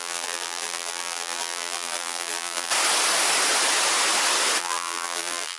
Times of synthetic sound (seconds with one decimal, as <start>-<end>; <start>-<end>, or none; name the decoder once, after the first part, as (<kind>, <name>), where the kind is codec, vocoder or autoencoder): 0.0-2.7 (vocoder, BigVGAN v2); 4.6-5.6